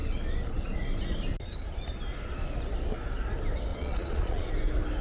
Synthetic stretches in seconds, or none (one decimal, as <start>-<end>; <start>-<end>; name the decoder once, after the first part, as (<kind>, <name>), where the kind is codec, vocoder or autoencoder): 3.7-4.5 (vocoder, Vocos)